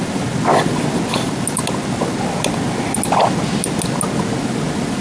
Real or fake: real